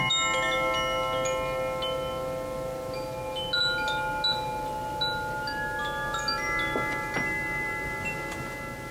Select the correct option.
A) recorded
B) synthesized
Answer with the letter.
A